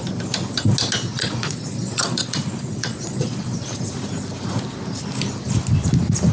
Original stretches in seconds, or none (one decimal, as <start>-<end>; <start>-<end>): 0.0-1.1; 3.6-6.3